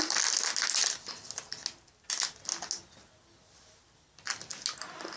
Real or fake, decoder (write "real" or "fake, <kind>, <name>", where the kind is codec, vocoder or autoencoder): real